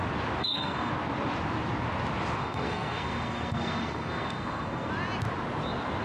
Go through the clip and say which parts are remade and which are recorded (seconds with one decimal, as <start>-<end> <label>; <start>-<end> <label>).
0.0-0.4 recorded; 0.4-0.9 remade; 0.9-2.4 recorded; 2.4-4.9 remade; 4.9-6.0 recorded